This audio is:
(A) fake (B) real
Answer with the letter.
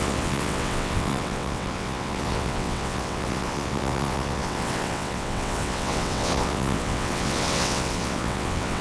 A